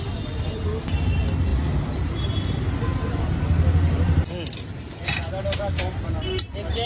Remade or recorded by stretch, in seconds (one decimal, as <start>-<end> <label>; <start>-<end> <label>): 0.0-6.9 recorded